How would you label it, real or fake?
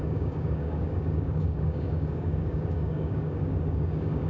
fake